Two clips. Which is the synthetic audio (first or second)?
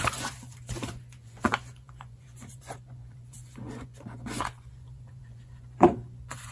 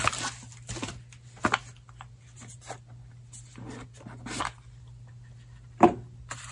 first